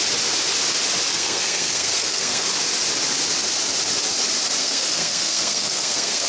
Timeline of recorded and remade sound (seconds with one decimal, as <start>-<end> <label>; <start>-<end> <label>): 0.0-1.1 recorded; 1.1-2.5 remade; 2.5-4.6 recorded; 4.6-6.3 remade